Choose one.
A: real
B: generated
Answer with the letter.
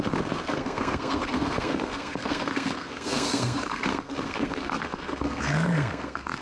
B